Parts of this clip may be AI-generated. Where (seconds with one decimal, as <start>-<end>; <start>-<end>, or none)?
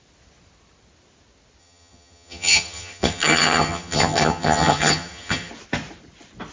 1.6-5.5